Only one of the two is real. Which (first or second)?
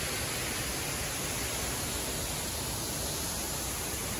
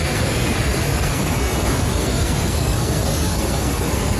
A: first